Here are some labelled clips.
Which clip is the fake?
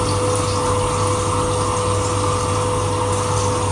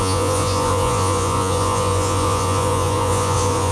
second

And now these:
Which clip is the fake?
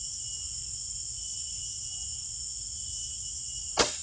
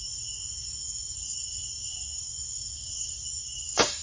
second